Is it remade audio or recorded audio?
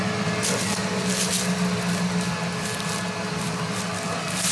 recorded